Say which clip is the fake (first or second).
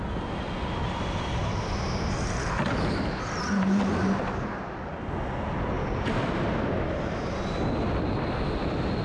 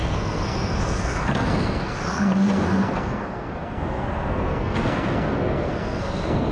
second